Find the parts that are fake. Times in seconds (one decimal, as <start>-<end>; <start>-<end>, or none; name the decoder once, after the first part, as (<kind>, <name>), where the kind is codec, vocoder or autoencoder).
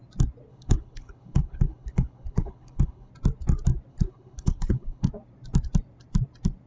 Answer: 0.5-3.1 (codec, HILCodec); 3.9-5.1